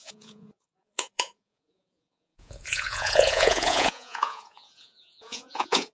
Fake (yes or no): yes